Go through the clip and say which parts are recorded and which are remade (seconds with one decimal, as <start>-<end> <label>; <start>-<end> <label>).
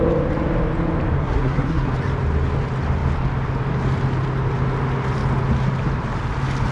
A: 0.0-1.2 recorded; 1.2-1.9 remade; 1.9-6.7 recorded